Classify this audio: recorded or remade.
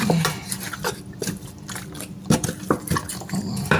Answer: recorded